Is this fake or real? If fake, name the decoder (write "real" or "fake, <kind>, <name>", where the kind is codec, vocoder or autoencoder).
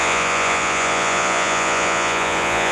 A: fake, vocoder, Vocos